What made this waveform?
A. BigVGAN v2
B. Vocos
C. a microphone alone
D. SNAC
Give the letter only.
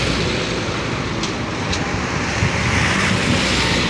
A